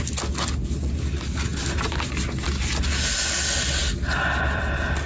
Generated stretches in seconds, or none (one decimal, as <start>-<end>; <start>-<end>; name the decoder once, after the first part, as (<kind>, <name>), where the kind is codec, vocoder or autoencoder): none